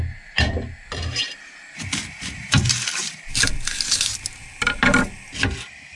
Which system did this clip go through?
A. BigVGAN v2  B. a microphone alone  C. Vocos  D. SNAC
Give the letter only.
B